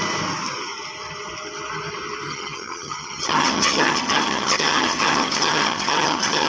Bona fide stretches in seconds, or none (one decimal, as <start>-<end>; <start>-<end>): 0.0-2.3